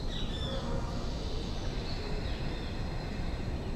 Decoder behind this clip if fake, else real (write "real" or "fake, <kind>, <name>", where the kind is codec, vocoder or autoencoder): real